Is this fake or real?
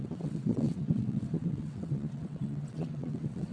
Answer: fake